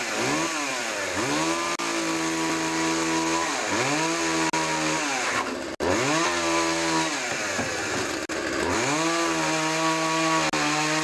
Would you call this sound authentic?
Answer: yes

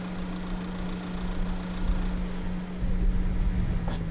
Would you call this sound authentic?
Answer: yes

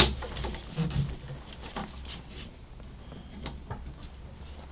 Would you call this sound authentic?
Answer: yes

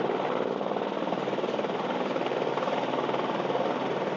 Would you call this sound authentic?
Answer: yes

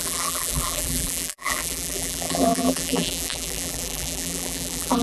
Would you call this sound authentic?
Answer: no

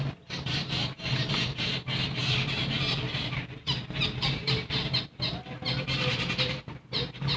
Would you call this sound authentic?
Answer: yes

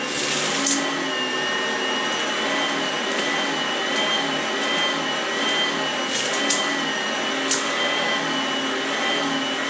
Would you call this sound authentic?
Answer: yes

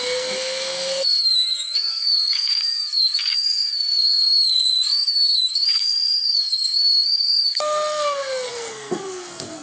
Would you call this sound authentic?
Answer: no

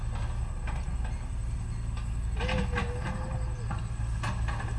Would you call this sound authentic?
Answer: yes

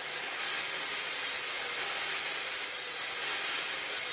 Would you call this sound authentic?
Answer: yes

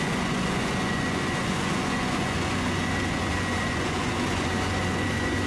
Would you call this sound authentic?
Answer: no